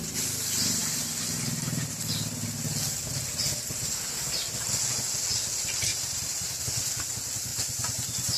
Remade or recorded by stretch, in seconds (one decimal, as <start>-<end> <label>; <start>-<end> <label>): 0.0-5.9 recorded; 5.9-6.6 remade; 6.6-8.4 recorded